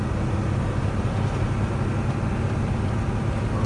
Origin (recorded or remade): recorded